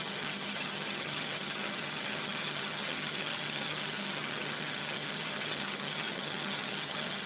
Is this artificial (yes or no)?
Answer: yes